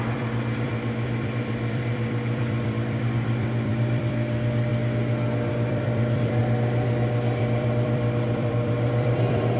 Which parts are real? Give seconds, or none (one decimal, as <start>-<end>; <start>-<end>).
4.7-5.5; 6.4-7.4